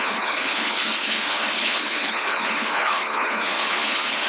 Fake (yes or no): yes